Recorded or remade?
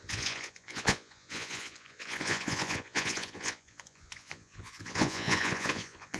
remade